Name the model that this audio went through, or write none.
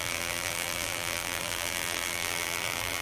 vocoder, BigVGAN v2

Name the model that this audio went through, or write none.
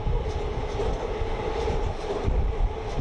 none